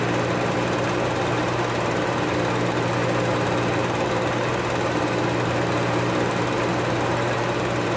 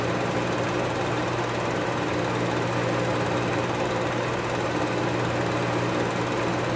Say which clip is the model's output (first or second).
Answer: first